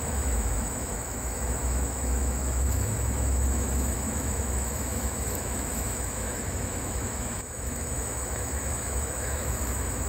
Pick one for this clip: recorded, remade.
remade